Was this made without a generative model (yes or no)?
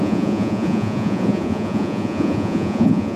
no